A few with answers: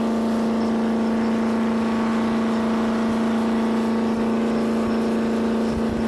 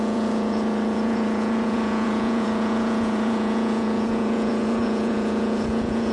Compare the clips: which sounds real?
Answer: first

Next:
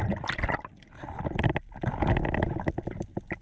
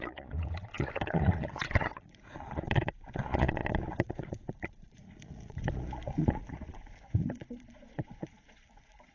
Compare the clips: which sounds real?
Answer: first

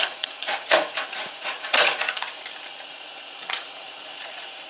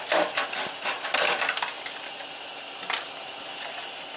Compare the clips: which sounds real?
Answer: second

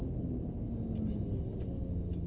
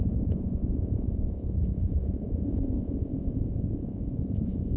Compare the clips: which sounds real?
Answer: first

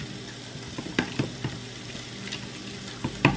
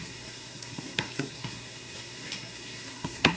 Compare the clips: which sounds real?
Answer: first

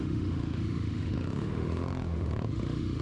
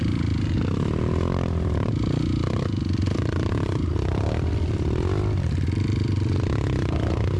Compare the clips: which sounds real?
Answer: second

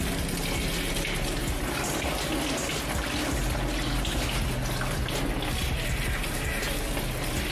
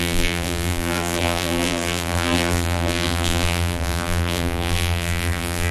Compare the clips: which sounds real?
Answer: first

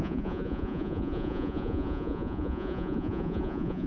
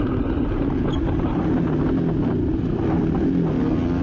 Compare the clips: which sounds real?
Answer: second